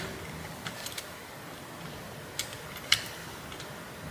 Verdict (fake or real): real